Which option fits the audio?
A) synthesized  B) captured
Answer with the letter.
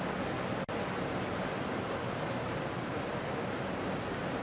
B